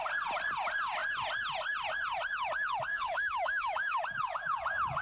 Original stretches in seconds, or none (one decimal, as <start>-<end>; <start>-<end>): 0.0-2.9; 4.0-5.0